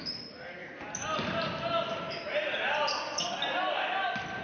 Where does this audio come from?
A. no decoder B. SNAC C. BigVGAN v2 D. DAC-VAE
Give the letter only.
A